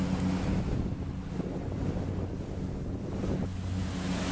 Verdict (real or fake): real